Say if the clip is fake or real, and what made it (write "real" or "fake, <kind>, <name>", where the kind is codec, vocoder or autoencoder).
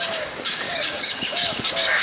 fake, codec, DAC